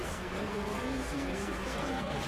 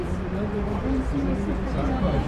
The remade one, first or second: first